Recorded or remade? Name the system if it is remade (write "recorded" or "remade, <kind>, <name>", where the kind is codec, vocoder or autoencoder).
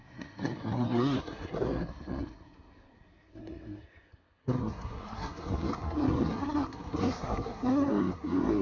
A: remade, codec, SNAC